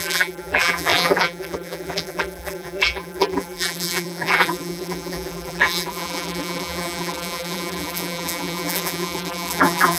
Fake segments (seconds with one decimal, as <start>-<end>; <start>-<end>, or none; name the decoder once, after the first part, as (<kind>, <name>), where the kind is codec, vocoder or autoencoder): 0.0-10.0 (vocoder, BigVGAN v2)